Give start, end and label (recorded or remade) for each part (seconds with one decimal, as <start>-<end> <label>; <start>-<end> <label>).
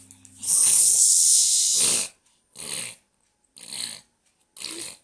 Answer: 0.0-1.3 recorded; 1.3-1.8 remade; 1.8-5.0 recorded